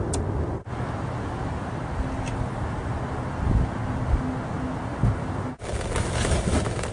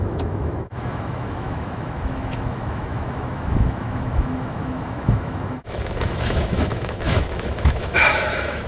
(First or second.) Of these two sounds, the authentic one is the first